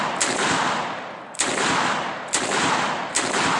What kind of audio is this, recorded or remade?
recorded